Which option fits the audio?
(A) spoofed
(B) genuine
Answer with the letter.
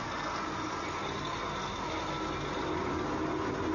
B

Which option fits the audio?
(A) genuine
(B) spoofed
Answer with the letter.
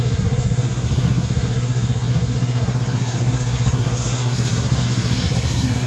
B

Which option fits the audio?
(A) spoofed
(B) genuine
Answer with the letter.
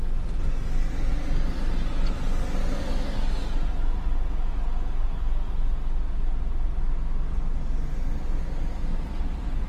B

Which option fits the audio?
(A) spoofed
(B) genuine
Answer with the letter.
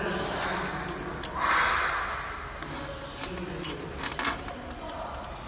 B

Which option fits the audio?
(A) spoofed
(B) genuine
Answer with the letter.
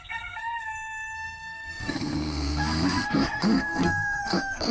A